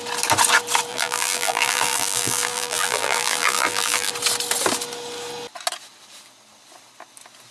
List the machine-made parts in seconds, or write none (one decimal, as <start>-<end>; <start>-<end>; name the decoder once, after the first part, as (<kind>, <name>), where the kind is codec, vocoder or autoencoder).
0.9-4.1 (vocoder, BigVGAN v2)